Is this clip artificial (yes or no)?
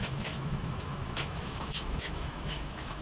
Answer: yes